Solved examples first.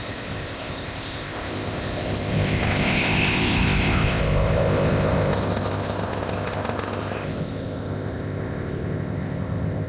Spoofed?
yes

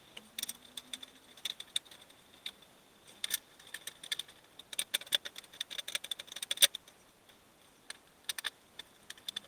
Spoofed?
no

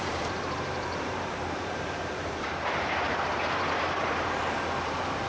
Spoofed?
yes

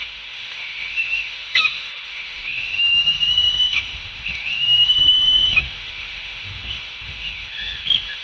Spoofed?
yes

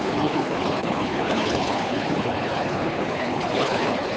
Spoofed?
yes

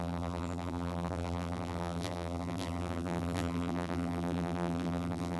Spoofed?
yes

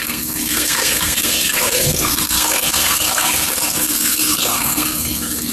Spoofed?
yes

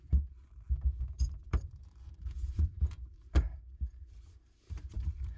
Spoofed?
yes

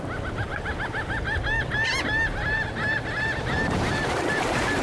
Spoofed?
no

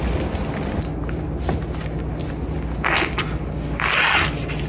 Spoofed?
no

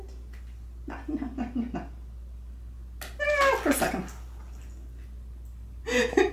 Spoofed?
no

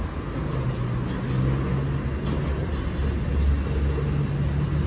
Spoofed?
no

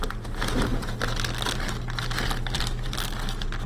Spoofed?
no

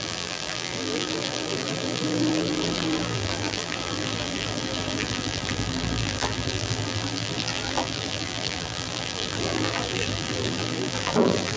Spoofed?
yes